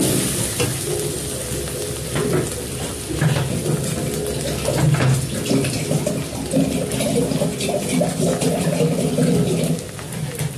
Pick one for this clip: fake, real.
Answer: real